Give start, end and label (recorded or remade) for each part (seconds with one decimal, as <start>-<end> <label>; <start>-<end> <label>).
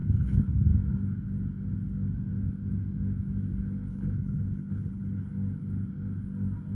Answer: 0.0-0.7 remade; 0.7-3.9 recorded; 3.9-5.3 remade; 5.3-6.7 recorded